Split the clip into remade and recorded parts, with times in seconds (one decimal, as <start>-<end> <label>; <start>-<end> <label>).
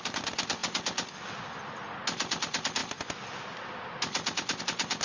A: 0.0-2.8 recorded; 2.8-4.6 remade; 4.6-5.0 recorded